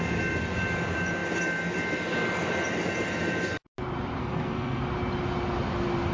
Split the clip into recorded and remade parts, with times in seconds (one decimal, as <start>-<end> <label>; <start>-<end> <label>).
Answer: 0.0-4.2 recorded; 4.2-4.8 remade; 4.8-6.1 recorded